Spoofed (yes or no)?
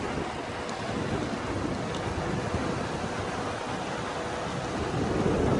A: no